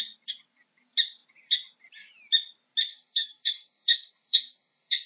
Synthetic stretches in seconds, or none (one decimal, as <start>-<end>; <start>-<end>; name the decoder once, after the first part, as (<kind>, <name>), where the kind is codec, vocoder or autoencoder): 2.9-5.1 (codec, SNAC)